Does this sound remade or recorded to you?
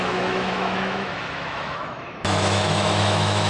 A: remade